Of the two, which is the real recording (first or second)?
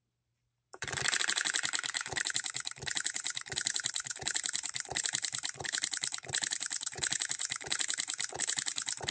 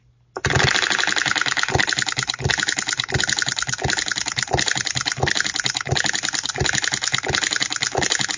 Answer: second